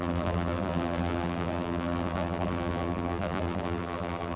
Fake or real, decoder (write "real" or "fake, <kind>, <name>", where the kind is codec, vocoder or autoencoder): fake, vocoder, BigVGAN v2